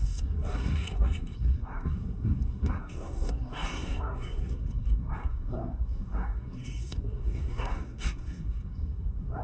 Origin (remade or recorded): remade